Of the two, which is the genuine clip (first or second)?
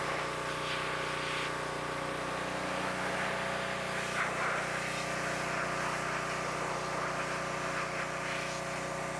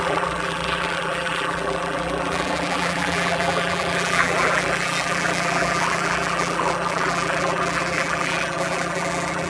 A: first